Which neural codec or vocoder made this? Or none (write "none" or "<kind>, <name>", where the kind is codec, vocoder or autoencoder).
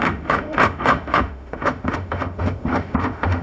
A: autoencoder, DAC-VAE